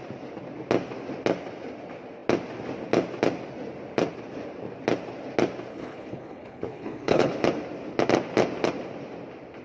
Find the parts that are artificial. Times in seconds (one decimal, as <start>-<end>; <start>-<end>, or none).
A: 5.7-7.4